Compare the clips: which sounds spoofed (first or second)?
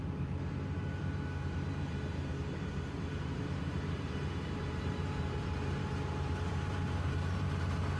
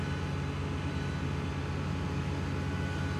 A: first